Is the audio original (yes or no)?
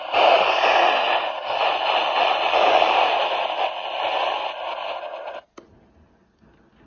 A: yes